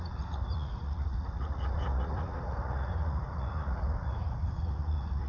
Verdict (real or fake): fake